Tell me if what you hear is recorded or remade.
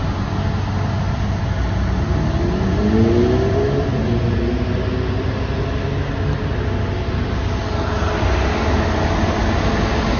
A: recorded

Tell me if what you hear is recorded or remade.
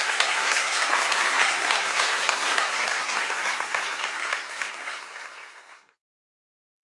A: remade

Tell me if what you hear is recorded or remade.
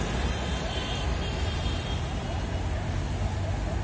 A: recorded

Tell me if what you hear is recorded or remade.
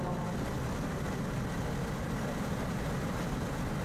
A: recorded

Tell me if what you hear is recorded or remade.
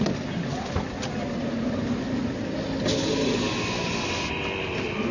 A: recorded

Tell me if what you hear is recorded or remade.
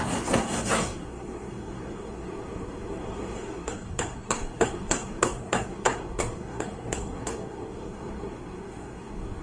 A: remade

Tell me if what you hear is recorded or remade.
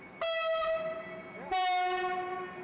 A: recorded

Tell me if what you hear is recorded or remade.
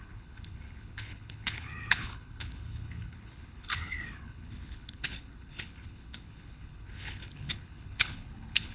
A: remade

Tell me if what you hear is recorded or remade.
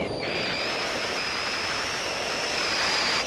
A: remade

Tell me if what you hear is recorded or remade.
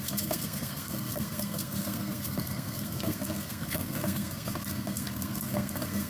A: remade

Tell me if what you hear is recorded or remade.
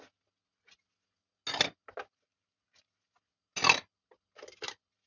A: recorded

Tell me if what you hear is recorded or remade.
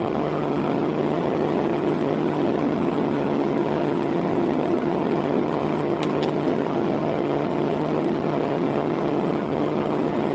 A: remade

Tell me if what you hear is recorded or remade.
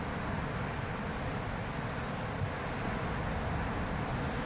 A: recorded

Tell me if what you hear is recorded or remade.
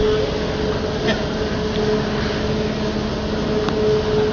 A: recorded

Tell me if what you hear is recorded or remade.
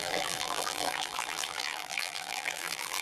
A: remade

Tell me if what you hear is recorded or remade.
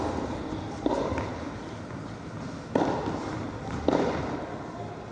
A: recorded